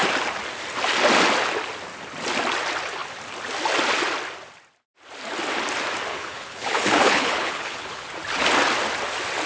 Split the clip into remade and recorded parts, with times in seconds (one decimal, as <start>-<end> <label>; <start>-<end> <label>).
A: 0.0-6.1 recorded; 6.1-8.1 remade; 8.1-9.5 recorded